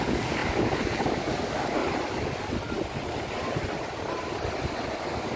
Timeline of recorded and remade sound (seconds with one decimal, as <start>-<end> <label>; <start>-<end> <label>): 0.0-1.8 remade; 1.8-5.0 recorded; 5.0-5.4 remade

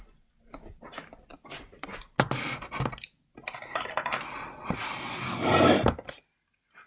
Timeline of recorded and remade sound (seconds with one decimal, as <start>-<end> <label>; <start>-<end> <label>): 0.0-6.9 recorded

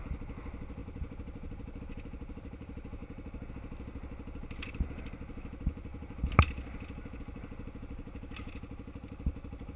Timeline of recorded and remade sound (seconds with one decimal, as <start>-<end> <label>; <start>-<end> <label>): 0.0-3.0 recorded; 3.0-3.5 remade; 3.5-9.8 recorded

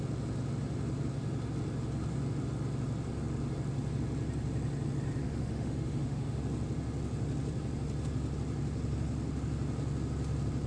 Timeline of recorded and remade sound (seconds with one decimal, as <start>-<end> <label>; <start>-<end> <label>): 0.0-5.2 recorded; 5.2-6.4 remade; 6.4-10.7 recorded

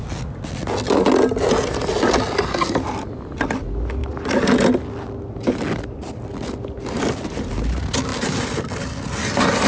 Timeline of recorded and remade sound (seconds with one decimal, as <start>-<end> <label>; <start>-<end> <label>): 0.0-9.7 recorded

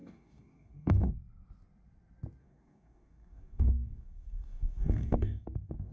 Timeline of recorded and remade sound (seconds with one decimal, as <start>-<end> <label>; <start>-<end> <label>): 0.0-1.1 remade; 1.1-2.4 recorded; 2.4-5.9 remade

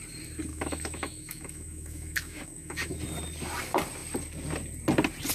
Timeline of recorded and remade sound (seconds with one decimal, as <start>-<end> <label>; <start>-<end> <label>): 0.0-0.5 recorded; 0.5-3.0 remade; 3.0-5.3 recorded

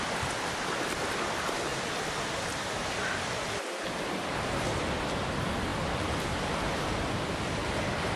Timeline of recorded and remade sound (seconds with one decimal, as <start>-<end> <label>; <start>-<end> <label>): 0.0-8.2 remade